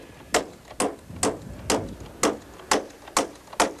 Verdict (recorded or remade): recorded